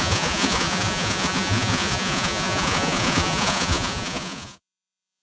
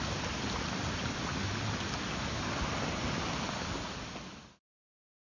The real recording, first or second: second